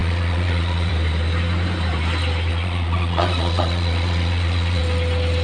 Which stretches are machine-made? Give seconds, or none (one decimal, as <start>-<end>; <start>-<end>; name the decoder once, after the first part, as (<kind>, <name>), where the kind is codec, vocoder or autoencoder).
0.0-0.9 (vocoder, Vocos); 2.5-4.8